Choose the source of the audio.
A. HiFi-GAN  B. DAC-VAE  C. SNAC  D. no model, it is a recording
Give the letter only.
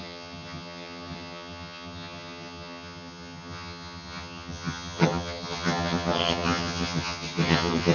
A